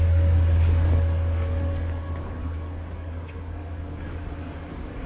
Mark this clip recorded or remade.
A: remade